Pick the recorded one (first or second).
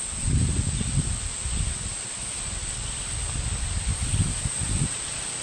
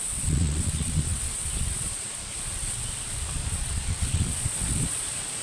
first